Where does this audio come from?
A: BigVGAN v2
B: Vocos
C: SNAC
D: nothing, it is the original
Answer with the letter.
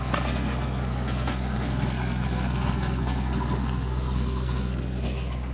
C